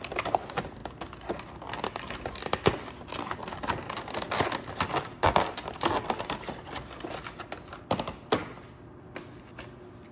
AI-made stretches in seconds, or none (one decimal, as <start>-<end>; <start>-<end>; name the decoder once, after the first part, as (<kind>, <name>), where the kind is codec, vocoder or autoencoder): none